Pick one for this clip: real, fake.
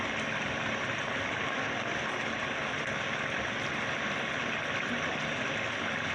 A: real